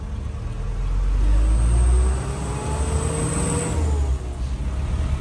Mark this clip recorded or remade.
recorded